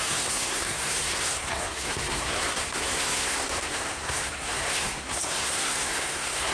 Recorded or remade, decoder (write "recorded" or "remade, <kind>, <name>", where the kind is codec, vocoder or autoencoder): remade, codec, SNAC